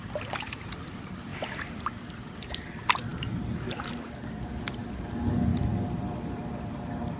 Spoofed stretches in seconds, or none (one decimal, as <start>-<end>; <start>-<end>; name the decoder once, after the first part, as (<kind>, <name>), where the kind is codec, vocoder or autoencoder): 1.3-2.5 (vocoder, BigVGAN v2); 5.5-7.2